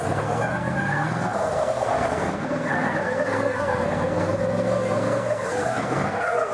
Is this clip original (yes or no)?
no